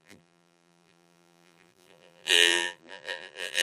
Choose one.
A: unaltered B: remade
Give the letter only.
B